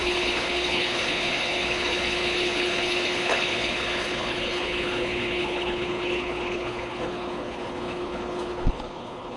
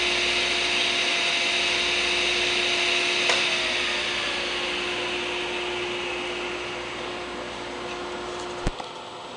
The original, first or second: second